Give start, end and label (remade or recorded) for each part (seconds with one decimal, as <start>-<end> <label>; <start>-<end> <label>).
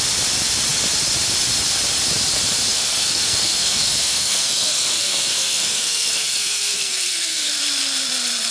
0.0-2.7 recorded; 2.7-7.5 remade; 7.5-8.5 recorded